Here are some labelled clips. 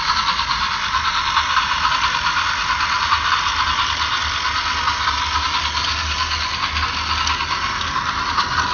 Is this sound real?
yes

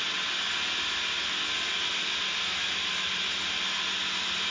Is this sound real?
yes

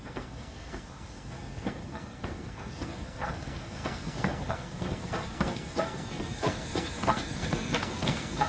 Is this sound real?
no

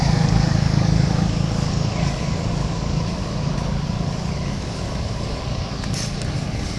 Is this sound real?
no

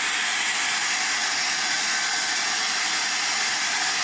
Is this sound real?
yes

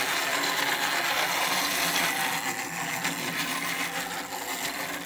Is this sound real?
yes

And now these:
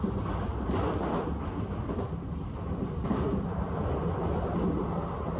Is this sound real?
yes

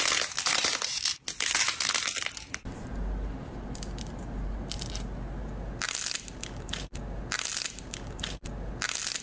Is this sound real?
yes